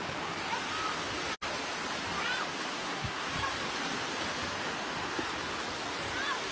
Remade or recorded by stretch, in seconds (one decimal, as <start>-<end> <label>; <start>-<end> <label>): 0.0-2.7 recorded; 2.7-3.3 remade; 3.3-6.5 recorded